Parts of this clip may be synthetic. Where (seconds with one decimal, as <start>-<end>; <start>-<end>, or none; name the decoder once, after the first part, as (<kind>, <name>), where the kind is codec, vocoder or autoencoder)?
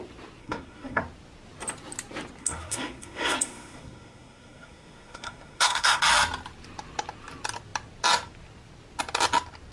0.4-1.0 (codec, SNAC); 2.4-6.0